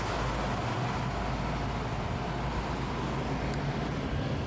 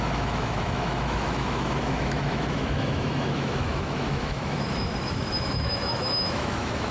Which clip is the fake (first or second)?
second